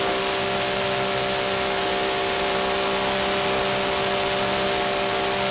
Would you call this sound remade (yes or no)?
no